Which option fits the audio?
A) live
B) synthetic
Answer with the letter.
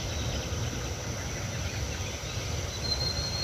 A